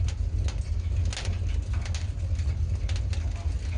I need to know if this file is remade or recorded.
recorded